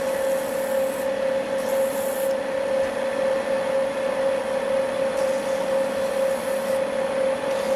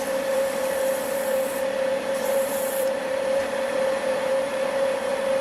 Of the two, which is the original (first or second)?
first